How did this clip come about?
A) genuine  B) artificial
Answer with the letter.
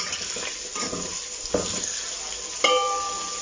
A